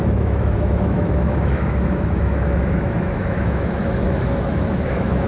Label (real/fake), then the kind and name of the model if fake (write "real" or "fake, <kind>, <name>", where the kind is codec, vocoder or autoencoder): fake, autoencoder, DAC-VAE